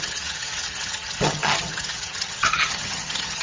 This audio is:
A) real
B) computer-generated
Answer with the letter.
B